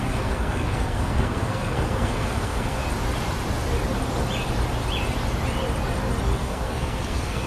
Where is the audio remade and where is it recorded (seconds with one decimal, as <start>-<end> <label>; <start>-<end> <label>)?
0.0-2.8 remade; 2.8-6.4 recorded; 6.4-7.5 remade